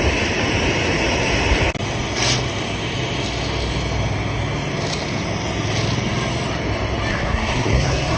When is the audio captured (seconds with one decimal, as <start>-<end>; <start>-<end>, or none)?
0.0-7.1